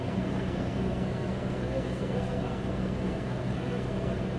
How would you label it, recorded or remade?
remade